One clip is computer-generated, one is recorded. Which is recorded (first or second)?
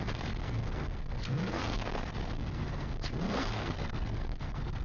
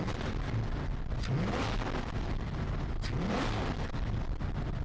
second